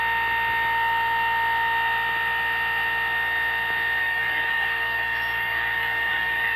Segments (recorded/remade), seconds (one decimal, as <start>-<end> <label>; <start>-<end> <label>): 0.0-4.0 recorded; 4.0-6.6 remade